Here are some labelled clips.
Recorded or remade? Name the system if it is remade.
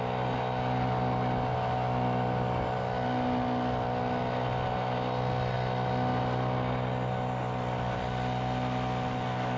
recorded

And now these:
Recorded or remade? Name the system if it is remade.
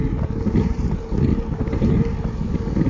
recorded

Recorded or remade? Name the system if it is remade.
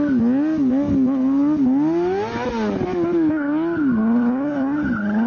recorded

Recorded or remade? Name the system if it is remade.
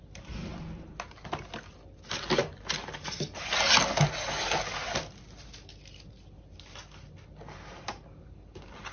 recorded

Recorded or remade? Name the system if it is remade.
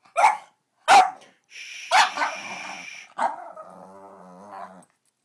recorded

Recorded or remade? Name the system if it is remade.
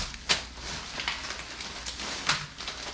recorded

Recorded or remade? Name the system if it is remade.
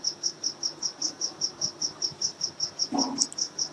recorded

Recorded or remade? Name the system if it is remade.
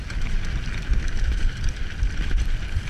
recorded